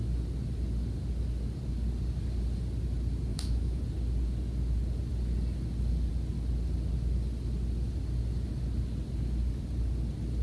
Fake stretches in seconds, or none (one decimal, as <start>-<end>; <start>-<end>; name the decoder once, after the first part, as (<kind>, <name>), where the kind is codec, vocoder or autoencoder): 3.3-3.8 (autoencoder, DAC-VAE)